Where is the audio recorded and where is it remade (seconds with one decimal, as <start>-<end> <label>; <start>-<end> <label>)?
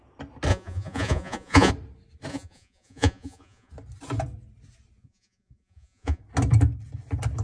0.0-0.5 recorded; 0.5-1.7 remade; 1.7-2.3 recorded; 2.3-3.7 remade; 3.7-5.0 recorded; 5.0-6.2 remade; 6.2-7.4 recorded